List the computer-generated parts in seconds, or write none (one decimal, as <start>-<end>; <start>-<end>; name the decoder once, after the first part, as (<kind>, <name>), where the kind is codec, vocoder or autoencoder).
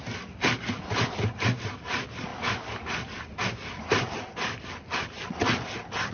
none